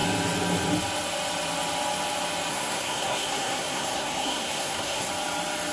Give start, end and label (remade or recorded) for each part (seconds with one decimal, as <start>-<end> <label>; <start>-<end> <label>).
0.0-2.5 recorded; 2.5-5.1 remade; 5.1-5.7 recorded